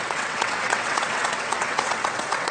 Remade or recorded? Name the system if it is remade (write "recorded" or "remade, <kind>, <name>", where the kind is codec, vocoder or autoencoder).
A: remade, vocoder, WaveNeXt